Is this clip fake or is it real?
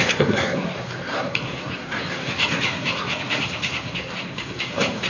fake